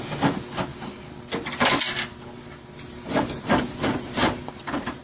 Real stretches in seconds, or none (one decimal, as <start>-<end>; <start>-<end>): 0.0-4.2